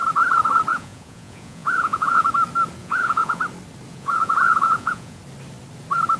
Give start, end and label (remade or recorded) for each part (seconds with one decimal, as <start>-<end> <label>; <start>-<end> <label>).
0.0-0.7 recorded; 0.7-2.3 remade; 2.3-2.8 recorded; 2.8-3.4 remade; 3.4-3.9 recorded; 3.9-5.2 remade; 5.2-6.2 recorded